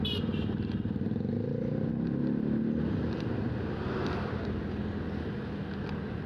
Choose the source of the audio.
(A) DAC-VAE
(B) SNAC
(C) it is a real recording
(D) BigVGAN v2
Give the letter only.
C